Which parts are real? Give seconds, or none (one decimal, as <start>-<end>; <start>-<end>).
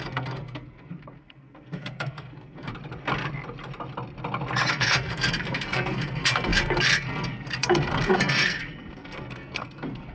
2.7-4.7